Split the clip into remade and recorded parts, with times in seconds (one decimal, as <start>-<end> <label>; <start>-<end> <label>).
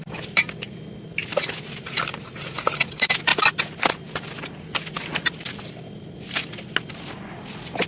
0.0-7.9 recorded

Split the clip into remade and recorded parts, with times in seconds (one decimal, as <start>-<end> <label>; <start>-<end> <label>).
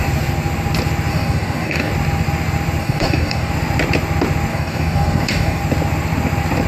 0.0-1.1 recorded; 1.1-1.9 remade; 1.9-2.8 recorded; 2.8-3.5 remade; 3.5-4.5 recorded; 4.5-5.6 remade; 5.6-6.7 recorded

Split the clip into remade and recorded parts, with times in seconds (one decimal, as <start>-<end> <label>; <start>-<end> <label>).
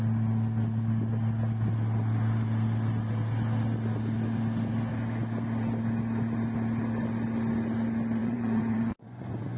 0.0-8.2 recorded; 8.2-9.6 remade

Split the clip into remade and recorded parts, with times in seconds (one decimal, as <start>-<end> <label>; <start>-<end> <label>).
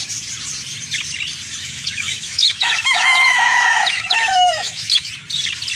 0.0-1.6 recorded; 1.6-5.1 remade; 5.1-5.8 recorded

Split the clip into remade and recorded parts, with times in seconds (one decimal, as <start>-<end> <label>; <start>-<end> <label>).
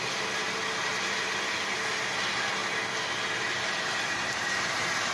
0.0-0.9 remade; 0.9-1.9 recorded; 1.9-2.6 remade; 2.6-4.1 recorded; 4.1-5.1 remade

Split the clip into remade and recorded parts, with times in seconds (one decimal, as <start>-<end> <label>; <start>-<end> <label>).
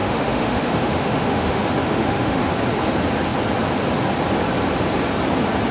0.0-2.4 remade; 2.4-5.7 recorded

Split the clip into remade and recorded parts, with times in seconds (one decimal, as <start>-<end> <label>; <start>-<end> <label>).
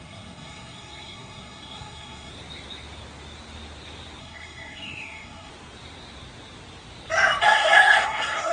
0.0-2.3 remade; 2.3-4.2 recorded; 4.2-5.5 remade; 5.5-7.4 recorded; 7.4-8.5 remade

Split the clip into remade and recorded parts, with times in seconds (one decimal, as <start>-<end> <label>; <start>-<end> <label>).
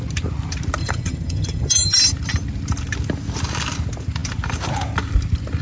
0.0-0.8 recorded; 0.8-2.0 remade; 2.0-5.6 recorded